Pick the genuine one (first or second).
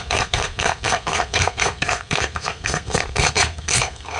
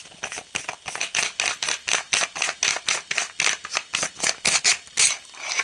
second